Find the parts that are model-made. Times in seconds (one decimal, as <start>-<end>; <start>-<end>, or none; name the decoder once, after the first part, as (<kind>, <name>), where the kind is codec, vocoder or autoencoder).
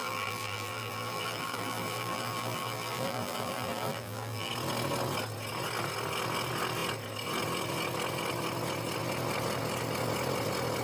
0.0-4.5 (vocoder, BigVGAN v2)